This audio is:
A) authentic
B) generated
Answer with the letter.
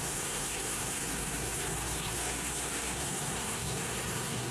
B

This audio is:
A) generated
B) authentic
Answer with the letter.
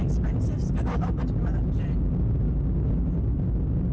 B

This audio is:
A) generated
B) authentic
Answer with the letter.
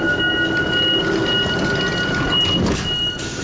B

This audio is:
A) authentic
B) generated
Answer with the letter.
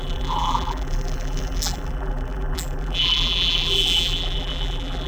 B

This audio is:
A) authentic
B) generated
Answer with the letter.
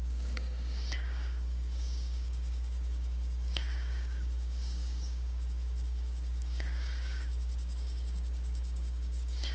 B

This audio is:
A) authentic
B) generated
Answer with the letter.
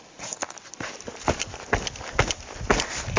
A